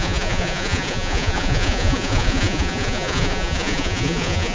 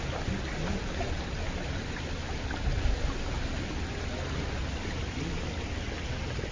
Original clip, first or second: second